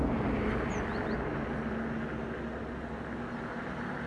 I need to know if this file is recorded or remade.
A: recorded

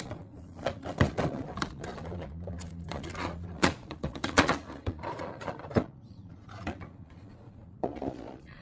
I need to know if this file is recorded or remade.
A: remade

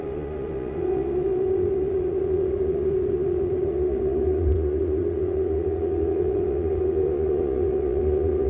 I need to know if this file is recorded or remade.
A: remade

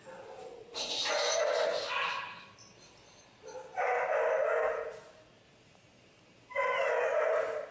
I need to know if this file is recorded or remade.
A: recorded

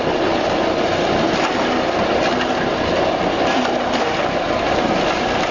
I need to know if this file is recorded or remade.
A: recorded